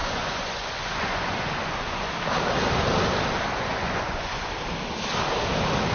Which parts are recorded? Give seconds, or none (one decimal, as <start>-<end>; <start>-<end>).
2.1-3.7; 4.5-5.9

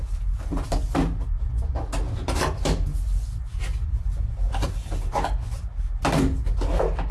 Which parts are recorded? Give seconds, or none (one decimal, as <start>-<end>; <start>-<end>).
0.0-7.1